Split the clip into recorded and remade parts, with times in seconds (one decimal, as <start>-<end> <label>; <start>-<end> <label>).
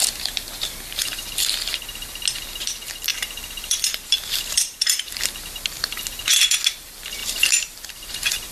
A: 0.0-3.1 recorded; 3.1-5.1 remade; 5.1-7.2 recorded; 7.2-8.5 remade